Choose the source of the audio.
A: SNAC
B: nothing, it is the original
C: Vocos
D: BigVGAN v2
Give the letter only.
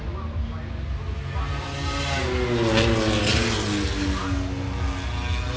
B